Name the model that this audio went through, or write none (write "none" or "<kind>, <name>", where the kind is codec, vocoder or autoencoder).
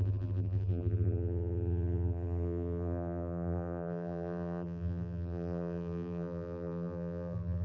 vocoder, BigVGAN v2